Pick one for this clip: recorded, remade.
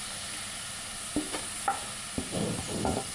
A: recorded